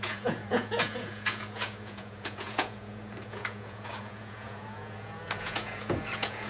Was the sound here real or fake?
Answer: fake